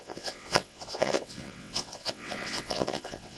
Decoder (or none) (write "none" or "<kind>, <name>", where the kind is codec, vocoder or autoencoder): vocoder, WaveNeXt